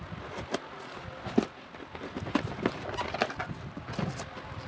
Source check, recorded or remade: recorded